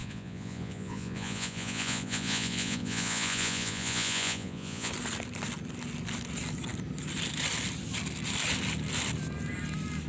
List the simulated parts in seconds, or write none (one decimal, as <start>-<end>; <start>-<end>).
0.0-4.9

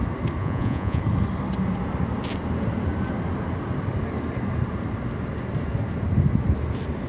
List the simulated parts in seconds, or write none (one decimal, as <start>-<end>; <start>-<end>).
0.4-1.0

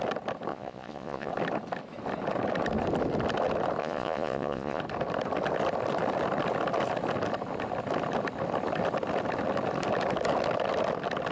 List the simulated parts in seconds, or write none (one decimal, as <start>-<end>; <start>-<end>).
0.5-1.3; 3.8-4.8

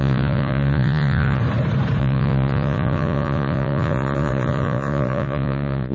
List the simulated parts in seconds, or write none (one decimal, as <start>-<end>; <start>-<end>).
0.0-1.4; 2.0-5.9

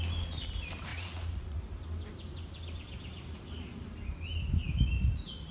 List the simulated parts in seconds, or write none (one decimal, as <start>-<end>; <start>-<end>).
0.9-1.6

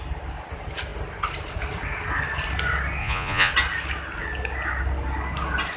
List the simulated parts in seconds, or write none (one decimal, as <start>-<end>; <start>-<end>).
3.0-3.5